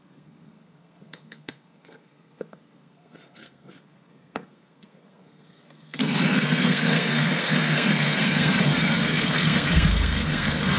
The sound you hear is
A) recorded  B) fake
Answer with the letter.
B